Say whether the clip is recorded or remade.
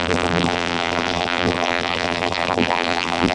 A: remade